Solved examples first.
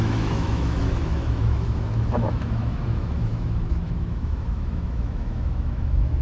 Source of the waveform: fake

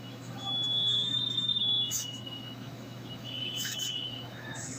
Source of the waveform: fake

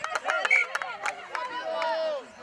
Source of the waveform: real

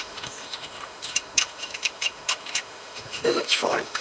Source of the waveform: fake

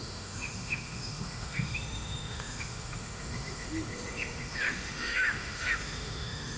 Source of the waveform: fake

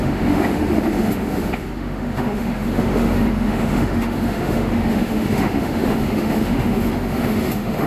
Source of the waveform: fake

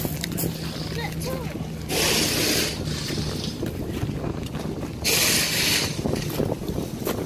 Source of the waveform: real